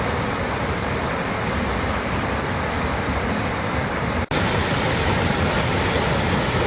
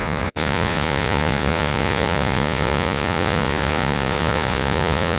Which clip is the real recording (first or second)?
first